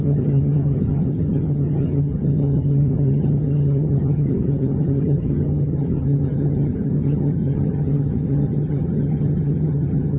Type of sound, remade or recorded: remade